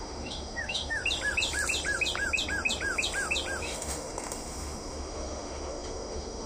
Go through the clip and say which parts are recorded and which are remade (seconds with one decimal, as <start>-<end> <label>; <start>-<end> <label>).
0.0-1.0 remade; 1.0-3.6 recorded; 3.6-6.5 remade